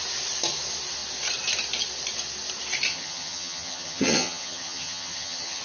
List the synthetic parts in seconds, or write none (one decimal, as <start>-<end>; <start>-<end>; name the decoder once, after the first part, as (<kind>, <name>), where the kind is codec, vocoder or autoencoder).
2.9-5.6 (vocoder, HiFi-GAN)